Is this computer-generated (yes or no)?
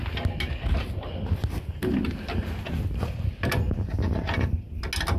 no